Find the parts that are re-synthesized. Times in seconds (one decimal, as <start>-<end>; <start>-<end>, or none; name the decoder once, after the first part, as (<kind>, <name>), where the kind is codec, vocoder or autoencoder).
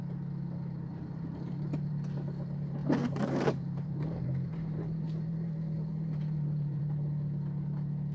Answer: 0.9-1.9 (vocoder, BigVGAN v2); 2.8-6.8